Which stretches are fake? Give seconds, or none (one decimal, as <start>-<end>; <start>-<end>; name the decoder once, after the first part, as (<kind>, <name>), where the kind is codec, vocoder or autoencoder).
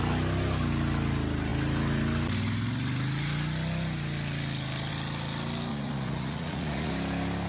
5.7-6.9 (vocoder, Vocos)